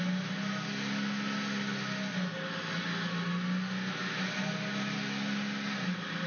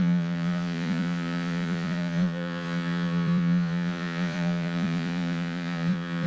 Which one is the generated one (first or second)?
second